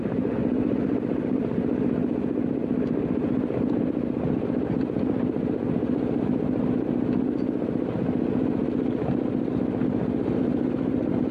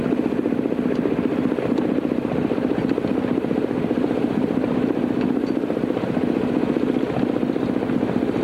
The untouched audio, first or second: first